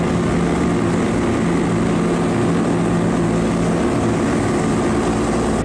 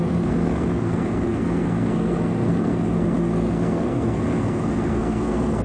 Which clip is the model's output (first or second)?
second